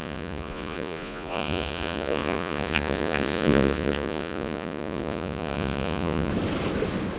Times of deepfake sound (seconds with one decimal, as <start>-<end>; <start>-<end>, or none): 0.0-6.3